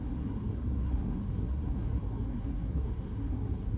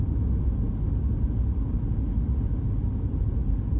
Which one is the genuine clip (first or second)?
second